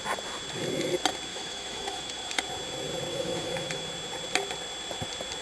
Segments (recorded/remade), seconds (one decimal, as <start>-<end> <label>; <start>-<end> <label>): 0.0-1.3 recorded; 1.3-2.4 remade; 2.4-3.1 recorded; 3.1-3.9 remade; 3.9-5.4 recorded